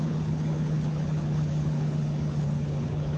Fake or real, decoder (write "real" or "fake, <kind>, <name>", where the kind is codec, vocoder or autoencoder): fake, codec, HILCodec